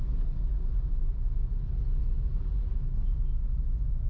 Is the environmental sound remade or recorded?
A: recorded